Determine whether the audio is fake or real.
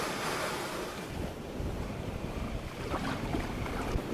fake